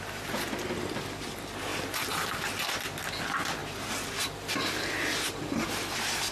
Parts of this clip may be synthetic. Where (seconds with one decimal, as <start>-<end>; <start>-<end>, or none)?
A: none